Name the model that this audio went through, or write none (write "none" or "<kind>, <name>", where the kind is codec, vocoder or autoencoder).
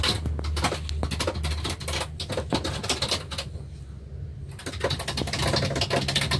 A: none